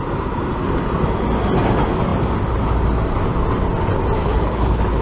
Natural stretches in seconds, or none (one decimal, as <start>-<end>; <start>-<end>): 0.0-4.2